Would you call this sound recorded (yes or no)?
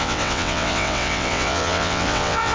no